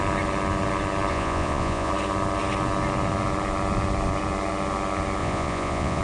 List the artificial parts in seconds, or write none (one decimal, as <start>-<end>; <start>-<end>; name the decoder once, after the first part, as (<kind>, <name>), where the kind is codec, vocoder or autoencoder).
1.1-1.9 (vocoder, Vocos); 5.2-6.0

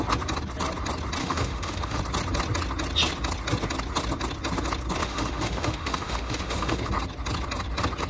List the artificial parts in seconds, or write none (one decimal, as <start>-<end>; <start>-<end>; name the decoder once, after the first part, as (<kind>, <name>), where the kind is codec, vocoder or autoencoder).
1.2-2.0 (autoencoder, DAC-VAE); 5.0-6.9

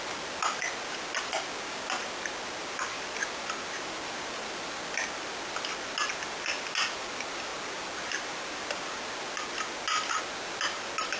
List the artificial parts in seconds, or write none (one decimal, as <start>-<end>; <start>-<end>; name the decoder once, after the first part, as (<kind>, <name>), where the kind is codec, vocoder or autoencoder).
none

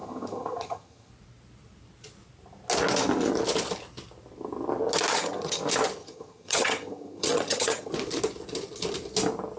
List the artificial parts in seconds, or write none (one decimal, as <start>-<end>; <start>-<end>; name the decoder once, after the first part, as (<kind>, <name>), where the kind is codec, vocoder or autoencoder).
0.0-1.1 (vocoder, HiFi-GAN); 5.1-5.6; 6.0-7.9

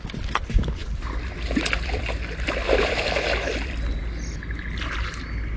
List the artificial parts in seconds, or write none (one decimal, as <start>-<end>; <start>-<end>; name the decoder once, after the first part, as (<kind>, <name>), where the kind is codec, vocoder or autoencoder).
0.0-4.0 (vocoder, BigVGAN v2)

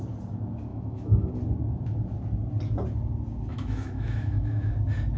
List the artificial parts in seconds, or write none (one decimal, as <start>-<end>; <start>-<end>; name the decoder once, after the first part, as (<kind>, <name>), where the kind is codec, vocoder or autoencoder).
0.7-1.3 (autoencoder, DAC-VAE); 3.5-4.7

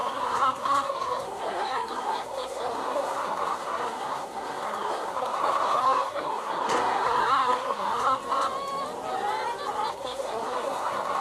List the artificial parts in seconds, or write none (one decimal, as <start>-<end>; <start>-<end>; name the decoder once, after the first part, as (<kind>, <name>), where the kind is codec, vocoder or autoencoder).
0.0-8.2 (codec, SNAC); 9.9-11.2